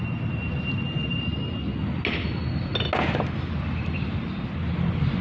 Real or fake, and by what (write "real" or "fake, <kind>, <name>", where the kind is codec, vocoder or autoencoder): real